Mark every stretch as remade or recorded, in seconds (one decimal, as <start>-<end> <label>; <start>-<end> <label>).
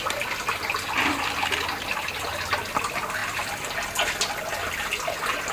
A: 0.0-5.5 recorded